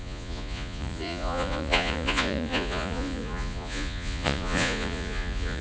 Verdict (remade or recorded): remade